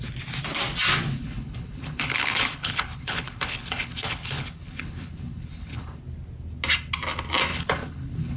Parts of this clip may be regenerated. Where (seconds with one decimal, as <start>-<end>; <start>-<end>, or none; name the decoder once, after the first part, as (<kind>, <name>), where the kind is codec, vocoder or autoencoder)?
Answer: 1.2-6.0 (codec, HILCodec); 7.5-8.4